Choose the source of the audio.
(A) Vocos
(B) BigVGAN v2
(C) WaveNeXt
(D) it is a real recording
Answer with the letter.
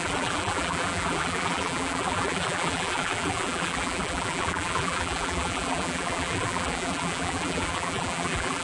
B